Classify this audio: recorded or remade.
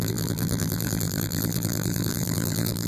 remade